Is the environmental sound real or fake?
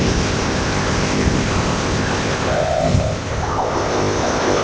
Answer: fake